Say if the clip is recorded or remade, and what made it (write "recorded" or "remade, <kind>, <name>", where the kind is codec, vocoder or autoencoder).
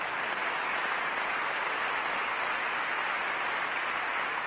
recorded